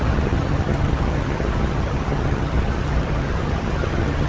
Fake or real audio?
fake